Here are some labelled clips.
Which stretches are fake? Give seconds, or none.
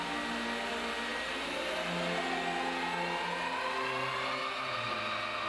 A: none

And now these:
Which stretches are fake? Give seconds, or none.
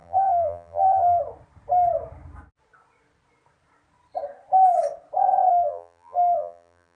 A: 0.0-1.2 (vocoder, BigVGAN v2); 5.5-7.0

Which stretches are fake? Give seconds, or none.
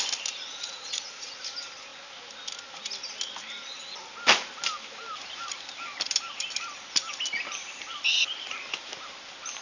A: 0.5-1.4 (vocoder, Vocos)